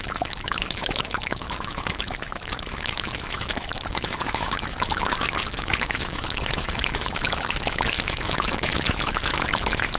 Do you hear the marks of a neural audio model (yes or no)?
yes